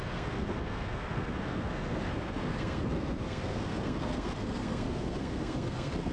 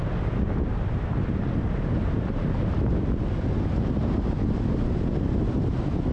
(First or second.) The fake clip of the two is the first